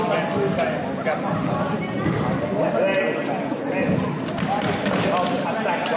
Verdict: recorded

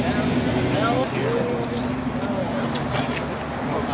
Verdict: recorded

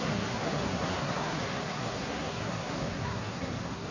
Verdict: remade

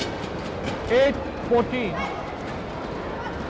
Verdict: recorded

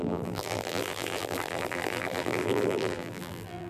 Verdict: remade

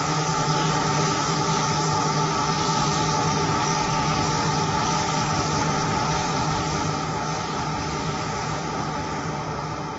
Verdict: recorded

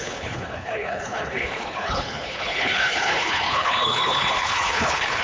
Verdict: remade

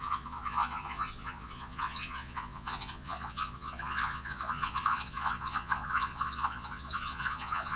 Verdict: remade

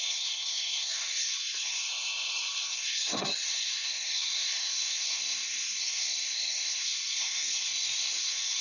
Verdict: remade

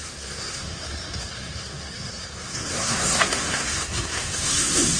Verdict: remade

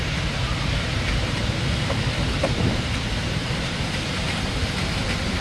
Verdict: remade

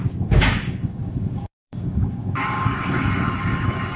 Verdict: remade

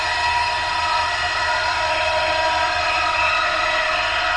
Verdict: recorded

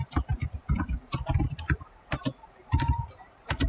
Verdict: remade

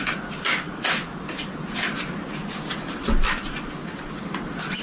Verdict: recorded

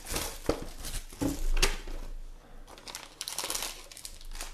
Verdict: recorded